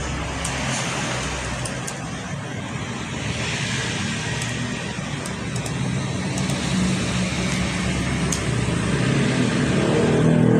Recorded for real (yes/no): yes